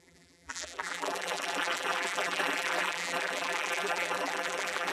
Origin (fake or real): fake